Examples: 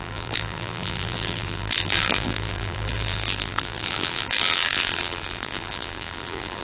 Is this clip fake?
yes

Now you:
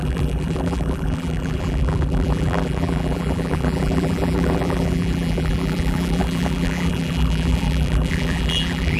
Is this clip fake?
yes